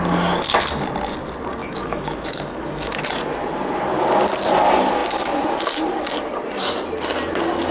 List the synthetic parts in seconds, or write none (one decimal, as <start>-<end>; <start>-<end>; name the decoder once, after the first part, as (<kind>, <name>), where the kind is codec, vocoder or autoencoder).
1.6-3.0 (autoencoder, DAC-VAE)

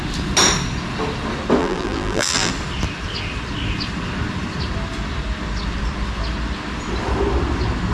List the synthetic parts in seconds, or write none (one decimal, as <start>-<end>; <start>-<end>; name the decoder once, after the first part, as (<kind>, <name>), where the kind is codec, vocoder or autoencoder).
1.6-2.5 (vocoder, BigVGAN v2)